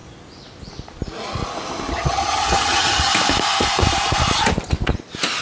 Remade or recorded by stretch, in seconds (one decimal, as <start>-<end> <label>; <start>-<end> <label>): 0.0-1.9 recorded; 1.9-3.1 remade; 3.1-5.4 recorded